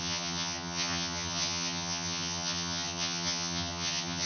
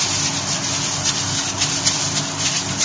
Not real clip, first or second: first